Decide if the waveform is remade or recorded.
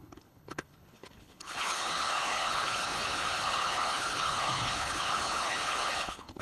remade